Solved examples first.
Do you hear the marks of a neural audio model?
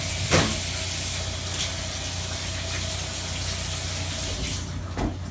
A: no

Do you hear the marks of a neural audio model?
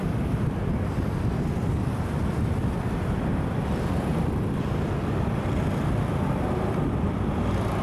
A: yes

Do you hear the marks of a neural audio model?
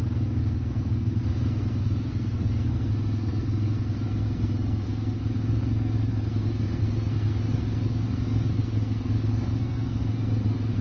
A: yes